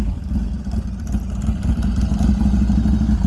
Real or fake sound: real